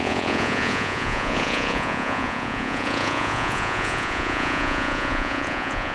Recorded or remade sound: remade